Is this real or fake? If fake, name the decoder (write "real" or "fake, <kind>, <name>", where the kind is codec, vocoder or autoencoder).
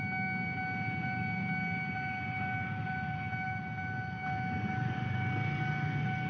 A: real